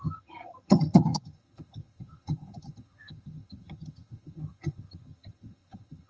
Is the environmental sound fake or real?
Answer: fake